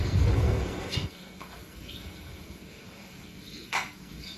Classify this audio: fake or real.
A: fake